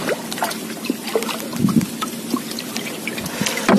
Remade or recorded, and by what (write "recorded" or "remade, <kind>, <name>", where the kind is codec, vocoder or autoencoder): recorded